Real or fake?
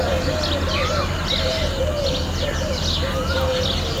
real